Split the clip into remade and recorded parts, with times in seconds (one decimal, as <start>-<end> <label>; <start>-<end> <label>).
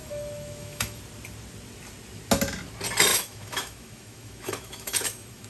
0.0-1.0 remade; 1.0-3.1 recorded; 3.1-5.5 remade